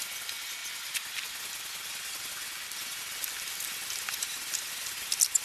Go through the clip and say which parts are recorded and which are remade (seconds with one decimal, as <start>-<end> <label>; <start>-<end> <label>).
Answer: 0.0-5.4 recorded